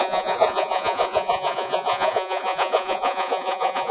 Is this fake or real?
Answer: fake